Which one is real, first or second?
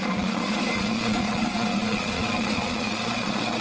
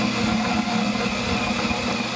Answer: second